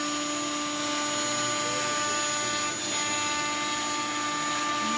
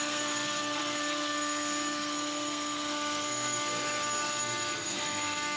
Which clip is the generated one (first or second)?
second